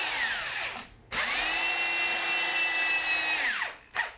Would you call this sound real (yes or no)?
yes